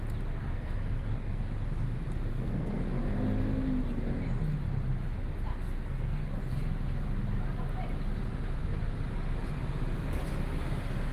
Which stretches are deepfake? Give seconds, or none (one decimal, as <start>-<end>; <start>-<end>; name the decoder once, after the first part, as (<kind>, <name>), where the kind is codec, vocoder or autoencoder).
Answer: 0.4-1.4 (codec, SNAC); 2.3-2.8; 5.5-6.3

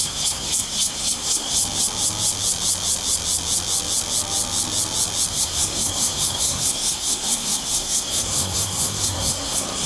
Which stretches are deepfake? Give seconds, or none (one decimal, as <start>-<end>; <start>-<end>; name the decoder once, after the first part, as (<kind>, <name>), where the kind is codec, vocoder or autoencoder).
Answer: 0.0-1.6 (codec, SNAC); 5.3-9.9